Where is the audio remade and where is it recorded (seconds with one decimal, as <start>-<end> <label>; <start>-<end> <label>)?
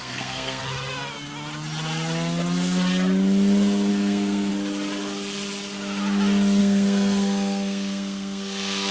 0.0-0.6 remade; 0.6-3.9 recorded; 3.9-4.5 remade; 4.5-6.6 recorded; 6.6-8.9 remade